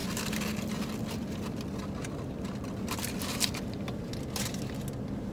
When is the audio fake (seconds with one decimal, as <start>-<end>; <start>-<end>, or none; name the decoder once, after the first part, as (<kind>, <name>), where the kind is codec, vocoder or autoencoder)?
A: none